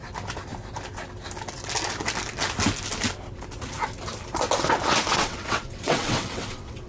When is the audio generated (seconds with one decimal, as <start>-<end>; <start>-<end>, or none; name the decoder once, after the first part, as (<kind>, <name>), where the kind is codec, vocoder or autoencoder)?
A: 5.1-6.9 (vocoder, WaveNeXt)